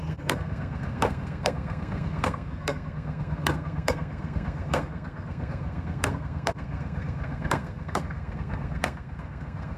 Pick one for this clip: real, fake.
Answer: fake